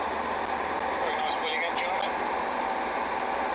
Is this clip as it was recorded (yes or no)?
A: yes